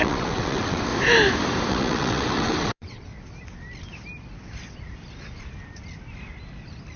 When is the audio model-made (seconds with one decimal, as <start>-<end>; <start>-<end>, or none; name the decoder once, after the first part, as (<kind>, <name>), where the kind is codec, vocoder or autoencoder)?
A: 0.0-0.9 (vocoder, WaveNeXt); 1.7-3.1